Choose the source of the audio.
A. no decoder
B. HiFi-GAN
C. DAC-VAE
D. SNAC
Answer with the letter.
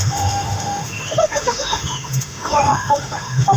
C